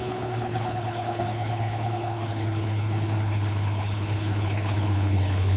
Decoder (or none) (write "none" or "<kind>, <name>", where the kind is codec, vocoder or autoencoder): codec, HILCodec